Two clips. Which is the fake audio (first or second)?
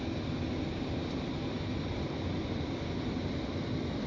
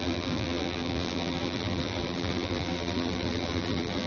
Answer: second